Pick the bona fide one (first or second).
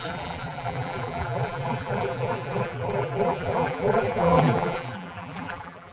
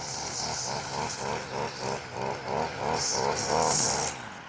second